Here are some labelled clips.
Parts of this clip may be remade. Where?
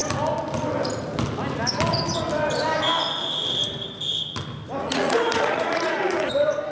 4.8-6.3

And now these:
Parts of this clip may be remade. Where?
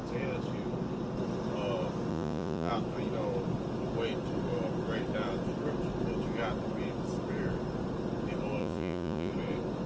2.1-2.7; 8.6-9.3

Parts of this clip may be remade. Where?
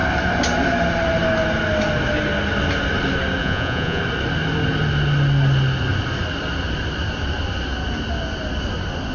3.4-4.0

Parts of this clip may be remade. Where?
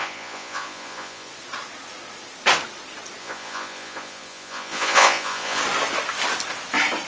0.0-1.3; 3.2-5.6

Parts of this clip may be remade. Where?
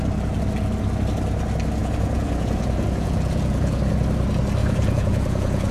1.8-3.8; 4.6-5.7